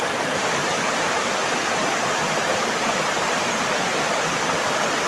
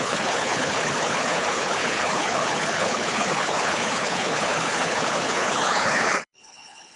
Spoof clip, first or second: second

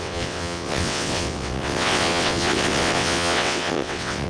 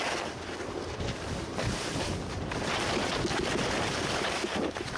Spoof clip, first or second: first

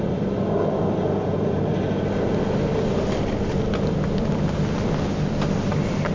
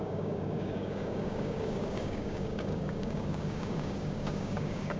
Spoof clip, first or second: second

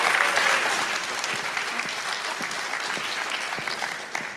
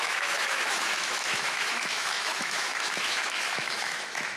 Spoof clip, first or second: second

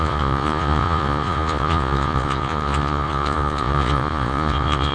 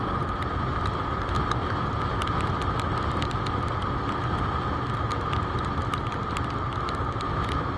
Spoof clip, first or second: first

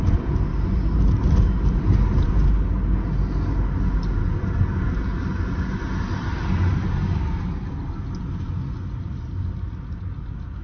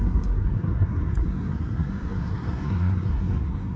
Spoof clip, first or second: second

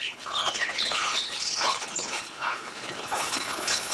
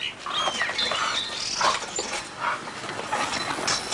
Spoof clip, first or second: first